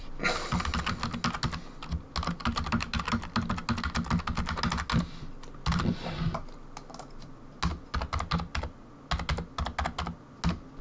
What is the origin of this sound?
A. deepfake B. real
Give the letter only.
B